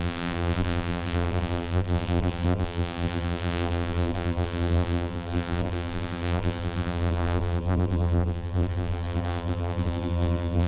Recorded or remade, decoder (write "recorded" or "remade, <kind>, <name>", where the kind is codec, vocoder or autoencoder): remade, vocoder, BigVGAN v2